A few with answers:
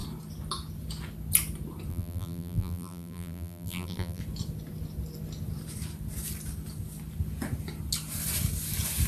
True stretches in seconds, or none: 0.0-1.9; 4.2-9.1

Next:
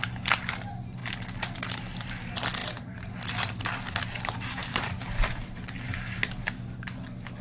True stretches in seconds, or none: 0.0-2.6; 3.1-4.6; 5.4-7.4